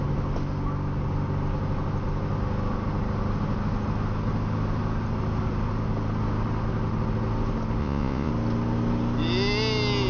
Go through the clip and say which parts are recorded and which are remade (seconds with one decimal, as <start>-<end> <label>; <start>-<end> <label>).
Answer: 0.0-7.8 recorded; 7.8-8.3 remade; 8.3-10.1 recorded